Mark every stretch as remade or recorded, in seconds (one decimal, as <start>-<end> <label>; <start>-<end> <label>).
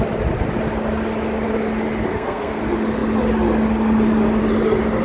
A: 0.0-2.1 recorded; 2.1-2.6 remade; 2.6-5.0 recorded